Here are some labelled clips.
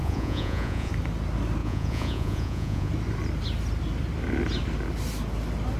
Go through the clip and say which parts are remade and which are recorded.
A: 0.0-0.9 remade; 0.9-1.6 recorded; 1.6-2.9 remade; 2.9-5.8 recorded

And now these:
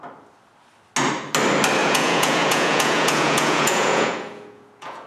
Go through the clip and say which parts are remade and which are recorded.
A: 0.0-1.8 recorded; 1.8-5.1 remade

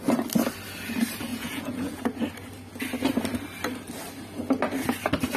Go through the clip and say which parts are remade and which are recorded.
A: 0.0-1.3 recorded; 1.3-2.0 remade; 2.0-5.4 recorded